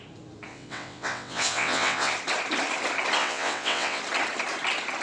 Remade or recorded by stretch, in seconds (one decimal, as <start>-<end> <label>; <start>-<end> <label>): 0.0-0.5 recorded; 0.5-2.1 remade; 2.1-3.2 recorded; 3.2-4.0 remade; 4.0-5.0 recorded